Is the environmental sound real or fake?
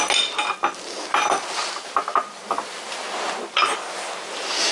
real